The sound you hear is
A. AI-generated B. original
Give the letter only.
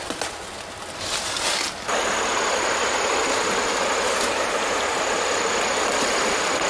B